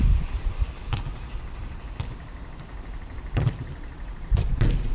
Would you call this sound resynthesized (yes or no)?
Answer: yes